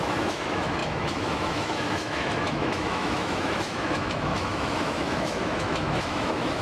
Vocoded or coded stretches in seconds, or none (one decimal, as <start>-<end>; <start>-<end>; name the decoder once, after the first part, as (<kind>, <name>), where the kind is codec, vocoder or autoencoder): 0.0-6.6 (autoencoder, DAC-VAE)